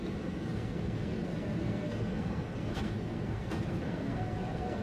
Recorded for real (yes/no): no